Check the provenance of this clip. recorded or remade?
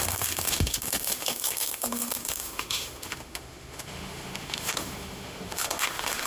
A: remade